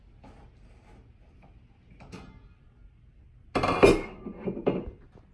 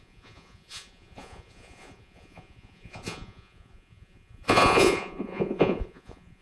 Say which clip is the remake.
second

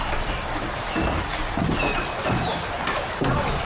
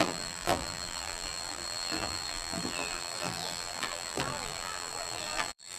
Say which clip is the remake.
second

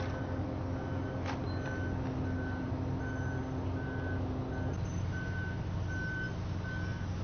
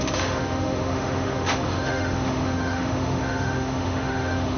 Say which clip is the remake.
second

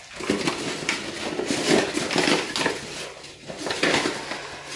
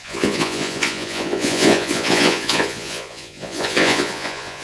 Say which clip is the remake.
second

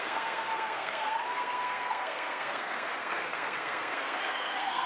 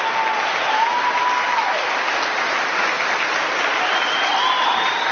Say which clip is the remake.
first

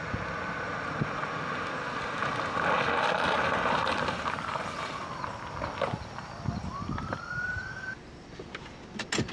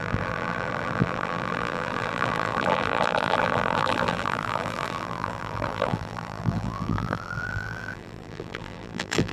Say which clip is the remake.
second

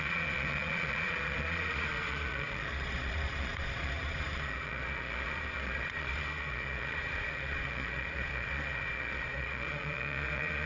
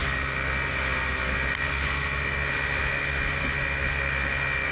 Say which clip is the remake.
first